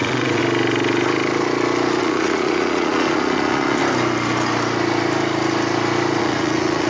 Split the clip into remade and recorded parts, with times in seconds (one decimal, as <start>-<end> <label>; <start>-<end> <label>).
0.0-0.4 remade; 0.4-2.0 recorded; 2.0-3.8 remade; 3.8-6.2 recorded; 6.2-6.9 remade